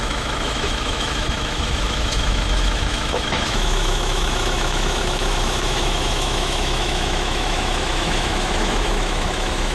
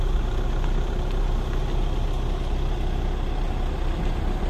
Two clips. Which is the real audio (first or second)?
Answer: second